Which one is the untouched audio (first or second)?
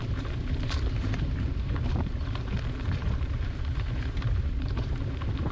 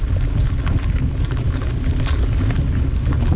second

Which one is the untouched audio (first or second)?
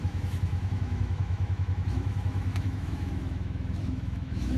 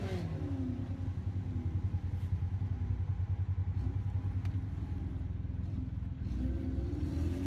second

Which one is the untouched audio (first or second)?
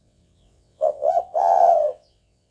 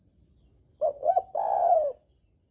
second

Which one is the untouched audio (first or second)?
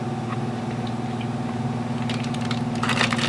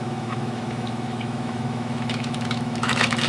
first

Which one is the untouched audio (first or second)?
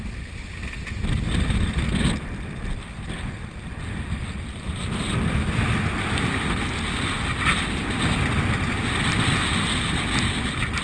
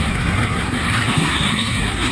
first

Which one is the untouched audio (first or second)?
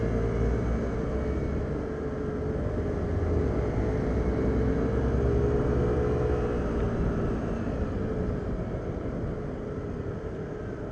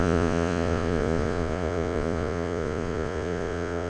first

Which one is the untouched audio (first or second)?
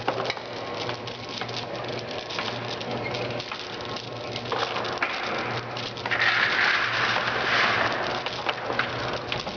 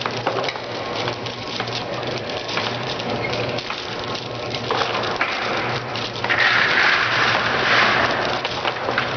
first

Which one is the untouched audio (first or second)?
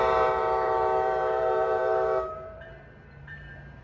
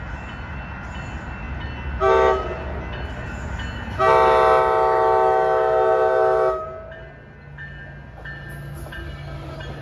second